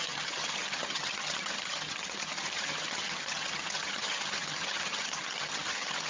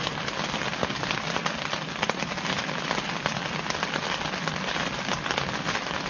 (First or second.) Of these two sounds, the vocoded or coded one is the first